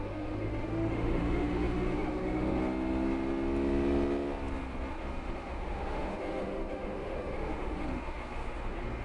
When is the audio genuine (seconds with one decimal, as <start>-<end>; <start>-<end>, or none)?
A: 2.6-4.9